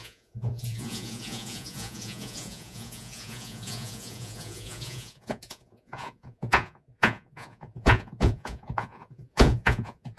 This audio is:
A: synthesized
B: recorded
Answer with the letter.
A